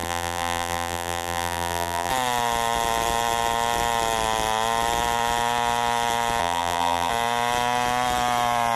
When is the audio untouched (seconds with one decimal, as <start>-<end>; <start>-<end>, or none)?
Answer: 2.1-6.4; 7.1-8.8